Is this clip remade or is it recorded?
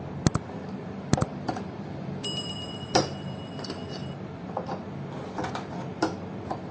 remade